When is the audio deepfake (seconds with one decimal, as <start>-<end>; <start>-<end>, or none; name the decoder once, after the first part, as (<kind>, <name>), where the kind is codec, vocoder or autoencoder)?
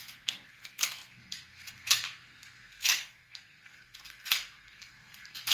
0.0-5.5 (codec, SNAC)